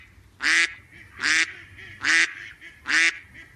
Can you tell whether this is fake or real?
real